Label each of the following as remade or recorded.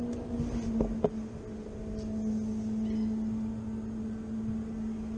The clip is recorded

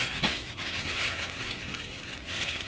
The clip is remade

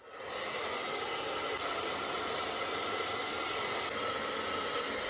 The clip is recorded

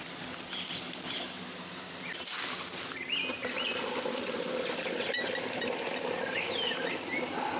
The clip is recorded